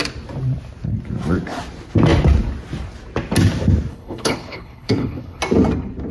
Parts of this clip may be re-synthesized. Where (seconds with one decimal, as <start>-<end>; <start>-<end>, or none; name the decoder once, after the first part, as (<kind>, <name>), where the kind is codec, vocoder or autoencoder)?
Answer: 3.9-5.4 (codec, HILCodec)